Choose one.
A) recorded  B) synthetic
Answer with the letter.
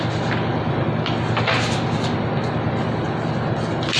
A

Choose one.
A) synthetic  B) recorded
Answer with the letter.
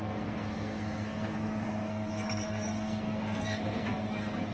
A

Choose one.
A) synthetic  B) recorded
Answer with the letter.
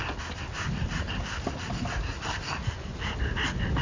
B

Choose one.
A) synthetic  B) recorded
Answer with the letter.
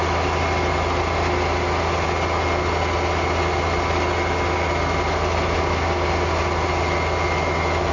B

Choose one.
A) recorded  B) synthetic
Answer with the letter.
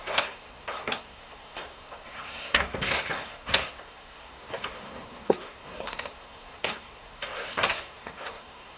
B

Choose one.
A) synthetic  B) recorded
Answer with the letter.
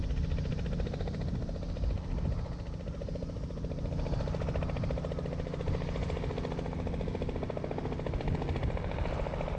B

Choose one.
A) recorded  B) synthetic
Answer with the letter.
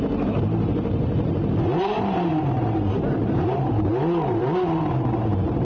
B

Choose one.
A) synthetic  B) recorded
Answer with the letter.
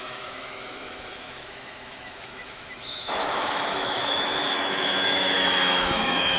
A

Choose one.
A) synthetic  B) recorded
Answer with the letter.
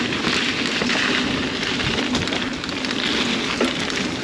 B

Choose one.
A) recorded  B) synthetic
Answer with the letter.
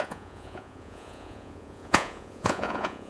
B